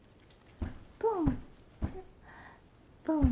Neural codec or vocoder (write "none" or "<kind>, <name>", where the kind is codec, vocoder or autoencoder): none